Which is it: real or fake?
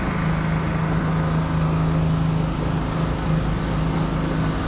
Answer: real